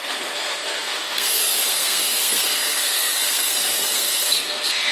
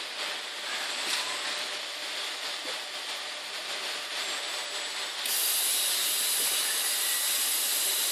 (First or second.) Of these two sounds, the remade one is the first